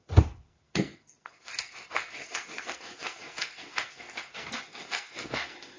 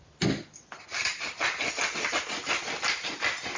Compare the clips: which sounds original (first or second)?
second